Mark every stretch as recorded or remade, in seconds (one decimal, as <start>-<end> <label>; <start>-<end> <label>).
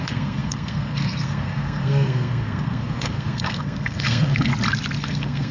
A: 0.0-4.5 remade; 4.5-5.0 recorded; 5.0-5.5 remade